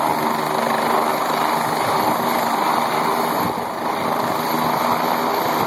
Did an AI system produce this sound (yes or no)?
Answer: no